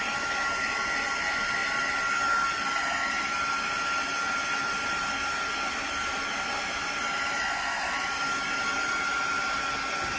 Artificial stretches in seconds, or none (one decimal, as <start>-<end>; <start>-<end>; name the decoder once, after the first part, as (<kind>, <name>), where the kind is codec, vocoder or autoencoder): none

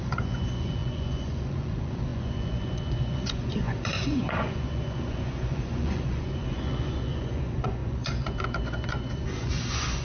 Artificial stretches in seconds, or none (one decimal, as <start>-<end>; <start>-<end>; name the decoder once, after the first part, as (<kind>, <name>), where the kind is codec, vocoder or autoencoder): 0.0-10.0 (vocoder, Vocos)

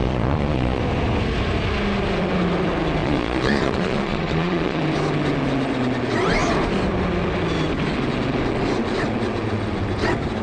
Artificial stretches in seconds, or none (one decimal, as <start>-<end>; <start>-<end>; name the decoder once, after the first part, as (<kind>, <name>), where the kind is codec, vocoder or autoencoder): 0.0-0.8 (vocoder, Vocos); 3.0-4.8

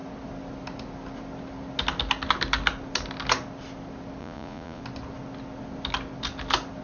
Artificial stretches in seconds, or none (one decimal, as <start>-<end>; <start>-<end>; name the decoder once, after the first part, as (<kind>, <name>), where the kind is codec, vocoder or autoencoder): 4.2-4.8 (vocoder, Vocos)

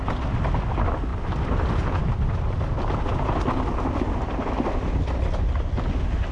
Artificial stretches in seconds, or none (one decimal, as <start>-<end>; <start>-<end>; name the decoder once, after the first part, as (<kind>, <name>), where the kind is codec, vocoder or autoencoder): none